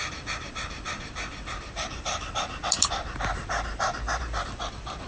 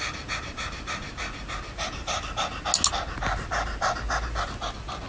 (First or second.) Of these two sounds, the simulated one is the first